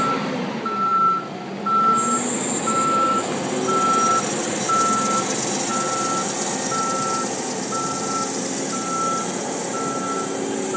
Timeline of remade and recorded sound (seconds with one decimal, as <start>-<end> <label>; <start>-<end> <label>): 0.0-10.8 recorded